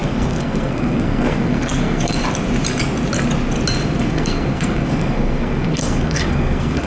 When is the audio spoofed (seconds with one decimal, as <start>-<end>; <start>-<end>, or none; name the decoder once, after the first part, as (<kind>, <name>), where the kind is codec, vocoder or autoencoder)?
0.0-2.2 (codec, SNAC); 4.0-6.9